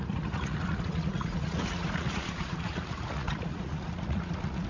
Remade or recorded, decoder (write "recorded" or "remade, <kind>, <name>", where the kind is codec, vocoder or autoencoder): remade, vocoder, Vocos